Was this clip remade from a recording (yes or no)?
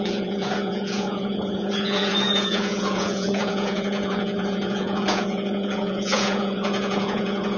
yes